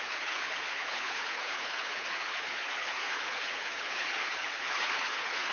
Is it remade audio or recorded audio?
remade